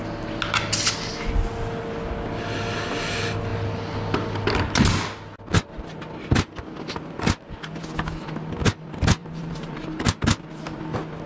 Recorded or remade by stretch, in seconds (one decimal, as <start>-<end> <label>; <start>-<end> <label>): 0.0-9.2 recorded; 9.2-10.8 remade; 10.8-11.3 recorded